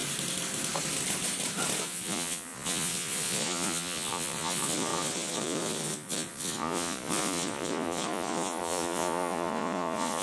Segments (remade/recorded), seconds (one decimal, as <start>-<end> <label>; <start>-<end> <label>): 0.0-1.8 recorded; 1.8-10.2 remade